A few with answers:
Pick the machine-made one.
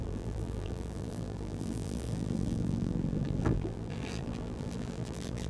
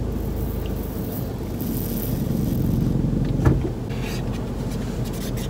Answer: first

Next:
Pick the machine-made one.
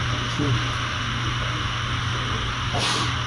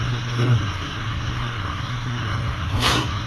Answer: second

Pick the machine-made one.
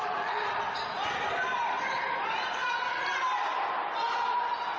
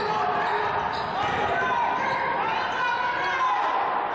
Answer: first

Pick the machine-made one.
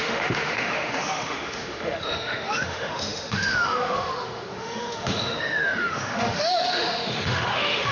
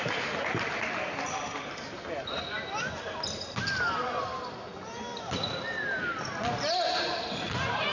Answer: first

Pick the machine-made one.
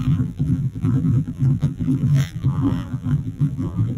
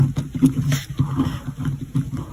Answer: first